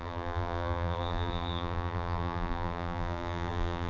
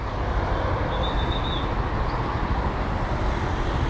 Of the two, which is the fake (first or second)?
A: first